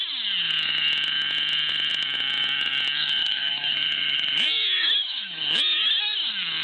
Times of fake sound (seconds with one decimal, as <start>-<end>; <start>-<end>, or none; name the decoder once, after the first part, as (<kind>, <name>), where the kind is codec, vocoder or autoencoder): 3.2-6.0 (autoencoder, DAC-VAE)